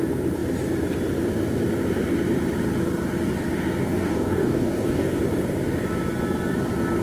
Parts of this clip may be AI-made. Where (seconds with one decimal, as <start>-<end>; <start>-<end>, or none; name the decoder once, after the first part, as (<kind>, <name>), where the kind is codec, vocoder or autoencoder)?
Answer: 3.8-5.2 (codec, DAC)